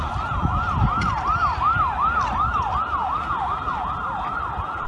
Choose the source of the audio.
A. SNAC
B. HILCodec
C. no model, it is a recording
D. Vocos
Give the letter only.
C